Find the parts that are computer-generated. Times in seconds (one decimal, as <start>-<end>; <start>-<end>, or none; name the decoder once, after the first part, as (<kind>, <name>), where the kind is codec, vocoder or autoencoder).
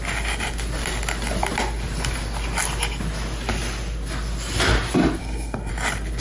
5.2-5.7 (codec, SNAC)